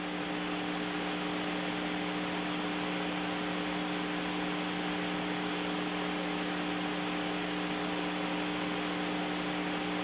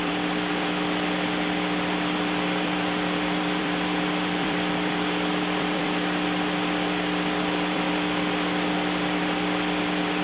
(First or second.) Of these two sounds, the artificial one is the second